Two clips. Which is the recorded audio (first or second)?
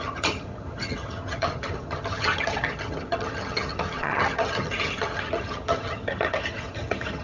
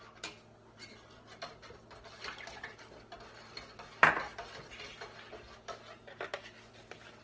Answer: second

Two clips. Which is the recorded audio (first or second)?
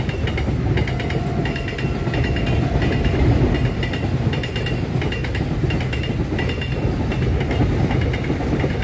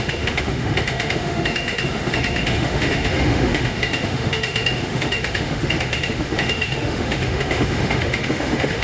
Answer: first